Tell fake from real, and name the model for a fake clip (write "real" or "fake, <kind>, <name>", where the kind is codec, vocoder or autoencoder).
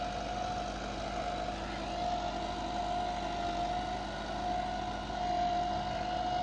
real